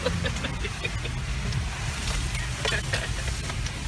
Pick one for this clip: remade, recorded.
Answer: recorded